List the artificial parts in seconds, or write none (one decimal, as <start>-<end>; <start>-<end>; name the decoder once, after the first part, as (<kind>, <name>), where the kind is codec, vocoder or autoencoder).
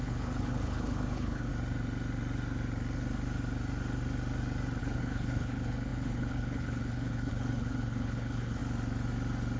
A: 0.0-1.5 (codec, HILCodec); 4.8-8.6